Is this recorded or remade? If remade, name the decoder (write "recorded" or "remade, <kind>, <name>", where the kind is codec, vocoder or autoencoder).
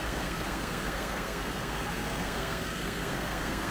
remade, codec, SNAC